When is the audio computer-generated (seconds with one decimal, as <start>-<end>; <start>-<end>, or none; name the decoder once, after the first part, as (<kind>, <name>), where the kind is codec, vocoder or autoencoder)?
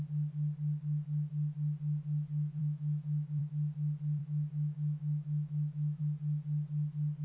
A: 2.6-3.4 (autoencoder, DAC-VAE); 4.2-6.0